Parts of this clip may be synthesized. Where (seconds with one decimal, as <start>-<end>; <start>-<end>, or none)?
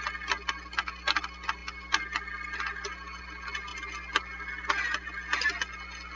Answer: none